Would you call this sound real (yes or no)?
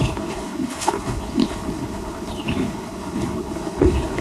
no